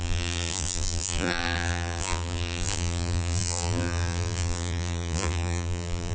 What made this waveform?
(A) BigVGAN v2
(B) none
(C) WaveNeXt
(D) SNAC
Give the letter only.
A